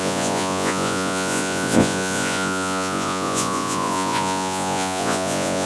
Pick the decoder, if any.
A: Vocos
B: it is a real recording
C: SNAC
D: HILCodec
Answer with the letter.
A